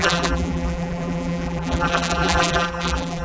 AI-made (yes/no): yes